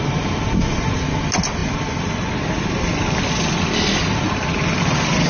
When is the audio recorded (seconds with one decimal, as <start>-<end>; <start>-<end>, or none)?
0.0-5.3